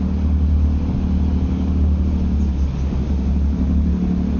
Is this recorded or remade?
recorded